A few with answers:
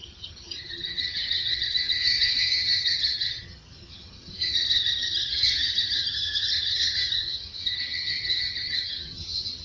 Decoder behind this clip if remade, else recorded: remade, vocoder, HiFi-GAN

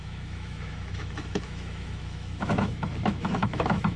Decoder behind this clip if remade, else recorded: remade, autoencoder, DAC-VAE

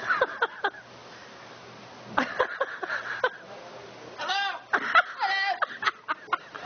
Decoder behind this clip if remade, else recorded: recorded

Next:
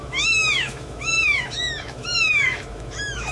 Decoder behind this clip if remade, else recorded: remade, autoencoder, DAC-VAE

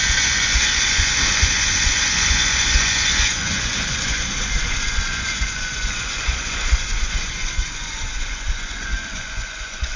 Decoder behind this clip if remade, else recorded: remade, vocoder, Vocos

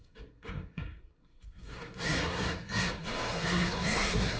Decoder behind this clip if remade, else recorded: remade, codec, SNAC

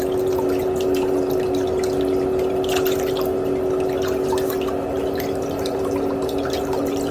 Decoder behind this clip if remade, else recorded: recorded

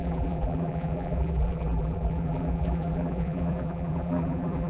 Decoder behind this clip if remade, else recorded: remade, vocoder, BigVGAN v2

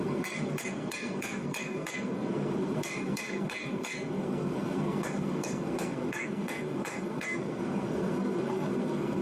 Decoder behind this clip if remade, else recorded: remade, codec, SNAC